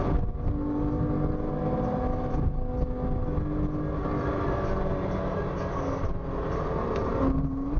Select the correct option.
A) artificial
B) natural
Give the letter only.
B